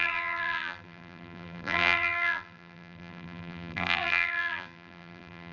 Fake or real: fake